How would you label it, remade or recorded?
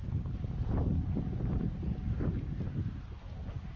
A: recorded